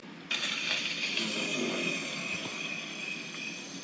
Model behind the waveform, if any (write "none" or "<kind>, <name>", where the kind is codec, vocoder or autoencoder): none